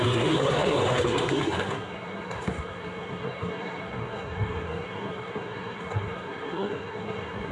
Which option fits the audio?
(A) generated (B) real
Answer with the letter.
A